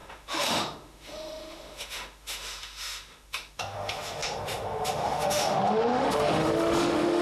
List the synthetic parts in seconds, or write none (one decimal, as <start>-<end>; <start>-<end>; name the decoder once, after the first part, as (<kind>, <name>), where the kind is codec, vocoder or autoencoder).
0.0-7.2 (autoencoder, DAC-VAE)